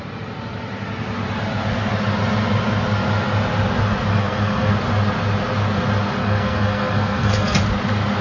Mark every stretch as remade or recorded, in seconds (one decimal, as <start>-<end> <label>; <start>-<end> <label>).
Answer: 0.0-4.1 recorded; 4.1-4.7 remade; 4.7-6.2 recorded; 6.2-7.6 remade; 7.6-8.2 recorded